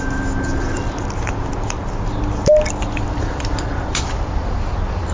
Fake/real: real